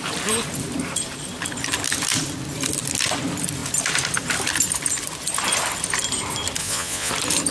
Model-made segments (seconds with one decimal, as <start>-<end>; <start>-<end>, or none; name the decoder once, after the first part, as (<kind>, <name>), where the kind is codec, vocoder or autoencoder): 6.6-7.1 (vocoder, Vocos)